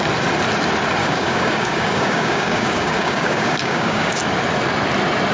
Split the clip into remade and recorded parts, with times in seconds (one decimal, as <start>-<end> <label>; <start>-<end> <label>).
0.0-1.0 recorded; 1.0-4.2 remade; 4.2-5.3 recorded